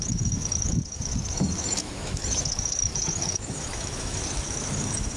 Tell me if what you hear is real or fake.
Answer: fake